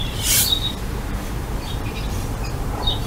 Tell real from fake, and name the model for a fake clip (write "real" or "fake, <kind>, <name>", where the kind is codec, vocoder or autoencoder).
fake, vocoder, BigVGAN v2